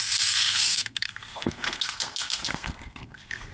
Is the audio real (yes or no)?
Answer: no